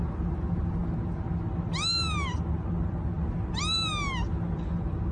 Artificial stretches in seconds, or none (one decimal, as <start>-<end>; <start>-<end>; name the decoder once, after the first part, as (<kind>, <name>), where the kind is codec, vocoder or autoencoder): none